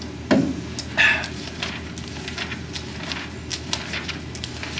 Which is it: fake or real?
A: real